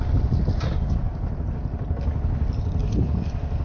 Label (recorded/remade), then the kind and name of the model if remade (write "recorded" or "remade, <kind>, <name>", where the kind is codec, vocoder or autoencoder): recorded